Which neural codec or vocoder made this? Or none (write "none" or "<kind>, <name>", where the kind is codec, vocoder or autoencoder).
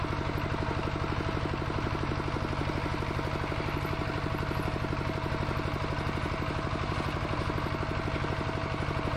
none